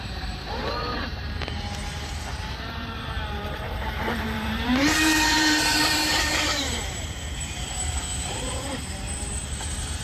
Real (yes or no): no